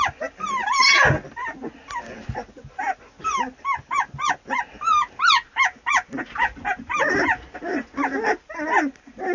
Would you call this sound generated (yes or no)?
no